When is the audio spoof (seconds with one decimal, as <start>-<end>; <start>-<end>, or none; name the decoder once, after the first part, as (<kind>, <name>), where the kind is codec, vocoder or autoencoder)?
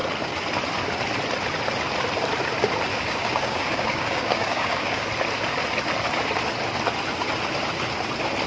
2.9-5.1 (codec, DAC)